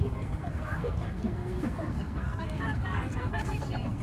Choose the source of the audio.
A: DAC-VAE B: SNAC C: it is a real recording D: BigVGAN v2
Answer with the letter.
B